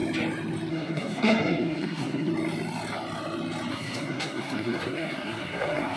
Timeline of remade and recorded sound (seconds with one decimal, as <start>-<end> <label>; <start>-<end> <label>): 0.0-0.7 recorded; 0.7-2.3 remade; 2.3-3.7 recorded; 3.7-6.0 remade